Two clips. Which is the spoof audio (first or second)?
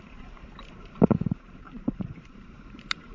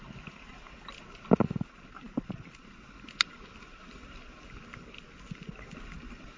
first